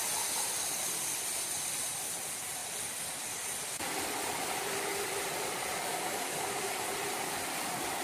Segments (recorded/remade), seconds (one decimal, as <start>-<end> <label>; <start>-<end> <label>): 0.0-5.9 recorded; 5.9-6.9 remade; 6.9-8.0 recorded